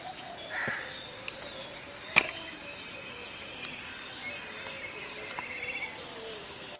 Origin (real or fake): real